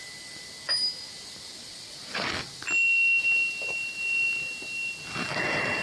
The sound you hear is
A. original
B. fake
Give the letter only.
A